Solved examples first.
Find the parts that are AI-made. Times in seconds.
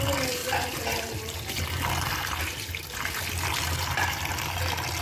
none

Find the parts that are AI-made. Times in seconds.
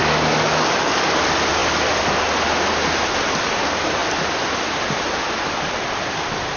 0.0-1.1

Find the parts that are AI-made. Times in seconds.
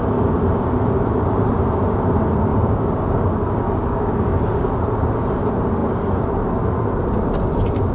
2.5-4.7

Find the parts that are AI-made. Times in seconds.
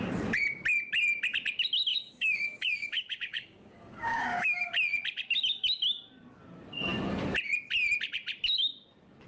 1.9-4.7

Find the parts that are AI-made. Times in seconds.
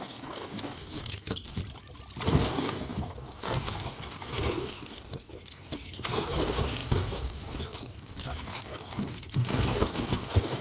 0.0-1.6; 2.3-10.6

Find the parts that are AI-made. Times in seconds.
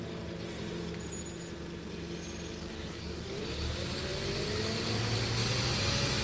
2.6-3.4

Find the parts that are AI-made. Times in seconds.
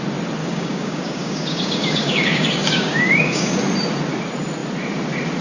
0.4-3.6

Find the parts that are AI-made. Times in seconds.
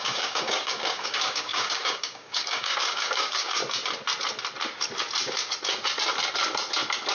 0.0-3.6